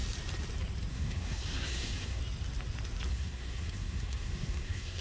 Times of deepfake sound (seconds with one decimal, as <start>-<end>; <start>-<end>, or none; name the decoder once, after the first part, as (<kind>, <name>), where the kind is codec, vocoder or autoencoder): 0.9-2.2 (codec, SNAC); 3.1-5.0